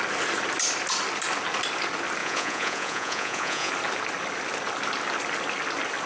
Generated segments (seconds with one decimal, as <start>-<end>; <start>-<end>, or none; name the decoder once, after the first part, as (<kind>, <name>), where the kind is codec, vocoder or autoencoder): 2.2-3.7 (vocoder, Vocos)

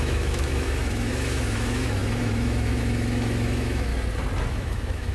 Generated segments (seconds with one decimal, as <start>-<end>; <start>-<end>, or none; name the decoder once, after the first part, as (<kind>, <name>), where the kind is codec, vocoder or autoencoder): 0.0-3.9 (autoencoder, DAC-VAE); 4.5-5.1

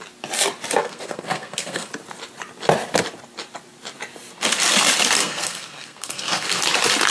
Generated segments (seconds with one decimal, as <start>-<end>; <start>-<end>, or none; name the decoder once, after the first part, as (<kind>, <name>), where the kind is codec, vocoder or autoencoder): 0.8-1.9 (codec, SNAC); 5.2-6.6

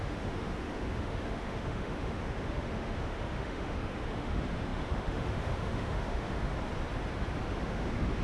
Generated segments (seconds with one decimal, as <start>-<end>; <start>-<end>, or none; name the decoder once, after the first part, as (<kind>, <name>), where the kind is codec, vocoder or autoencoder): 0.0-6.5 (autoencoder, DAC-VAE); 7.4-8.2